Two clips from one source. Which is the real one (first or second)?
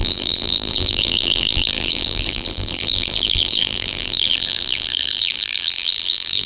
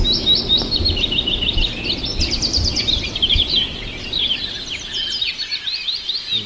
second